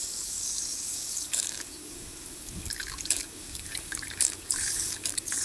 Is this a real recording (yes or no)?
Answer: no